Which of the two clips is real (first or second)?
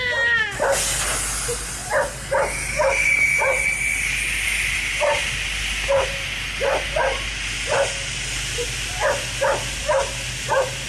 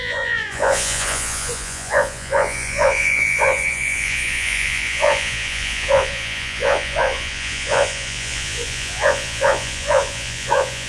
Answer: first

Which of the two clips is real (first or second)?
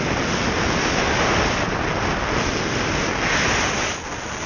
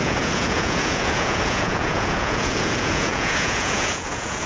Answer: first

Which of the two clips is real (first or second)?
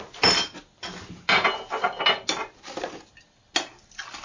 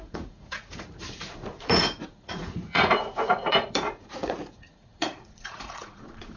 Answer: first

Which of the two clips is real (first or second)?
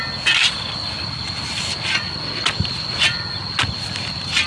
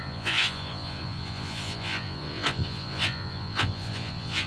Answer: first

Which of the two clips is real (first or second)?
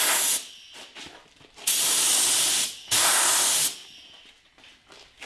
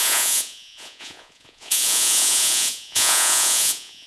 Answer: first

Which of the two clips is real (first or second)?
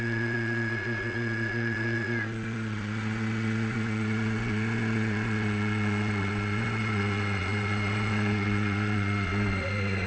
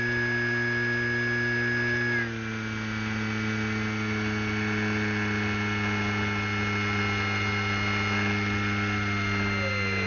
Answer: second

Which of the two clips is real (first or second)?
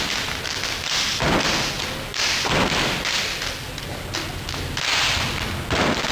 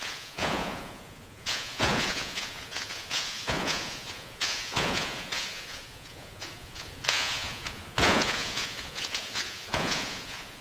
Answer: first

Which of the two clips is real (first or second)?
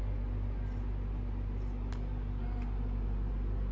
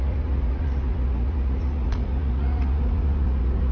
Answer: first